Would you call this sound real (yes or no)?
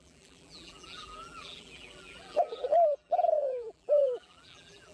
no